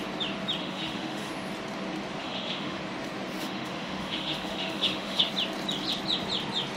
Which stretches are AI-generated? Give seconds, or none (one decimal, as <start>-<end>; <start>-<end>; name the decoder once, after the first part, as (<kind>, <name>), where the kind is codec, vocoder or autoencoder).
0.6-1.3 (autoencoder, DAC-VAE); 2.2-2.8; 3.4-5.3